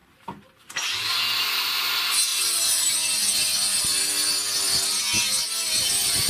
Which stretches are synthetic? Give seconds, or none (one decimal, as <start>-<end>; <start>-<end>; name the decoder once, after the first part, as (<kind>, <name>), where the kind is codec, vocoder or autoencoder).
0.0-1.2 (vocoder, BigVGAN v2); 2.3-2.9